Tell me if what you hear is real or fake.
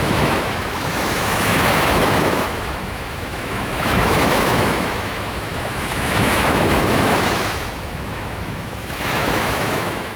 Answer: fake